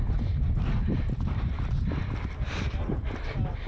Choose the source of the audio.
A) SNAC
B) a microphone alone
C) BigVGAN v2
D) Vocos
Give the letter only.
B